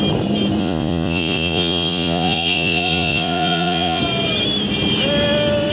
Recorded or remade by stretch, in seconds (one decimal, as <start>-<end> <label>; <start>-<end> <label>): 0.0-0.6 recorded; 0.6-4.0 remade; 4.0-5.7 recorded